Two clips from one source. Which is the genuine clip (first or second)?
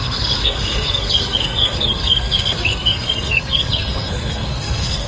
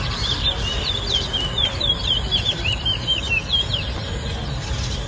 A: second